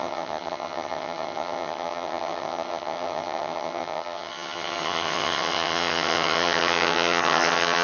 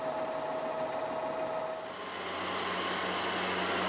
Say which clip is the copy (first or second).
first